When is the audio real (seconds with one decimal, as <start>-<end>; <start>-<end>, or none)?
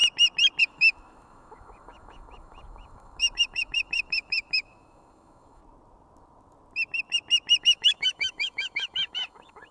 0.0-0.6; 5.6-7.6